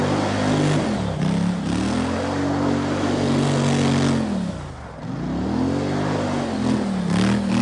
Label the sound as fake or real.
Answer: real